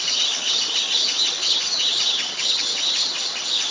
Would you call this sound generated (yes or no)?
yes